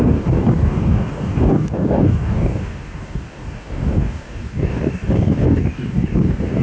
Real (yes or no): no